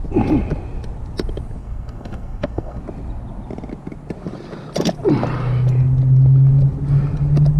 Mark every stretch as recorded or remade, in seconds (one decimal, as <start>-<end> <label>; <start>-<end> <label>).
0.0-1.6 recorded; 1.6-2.8 remade; 2.8-7.6 recorded